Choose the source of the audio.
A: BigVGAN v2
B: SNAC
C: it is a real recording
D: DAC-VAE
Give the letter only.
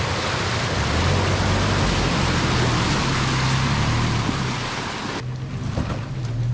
C